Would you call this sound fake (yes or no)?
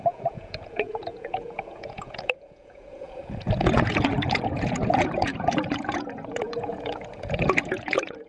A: yes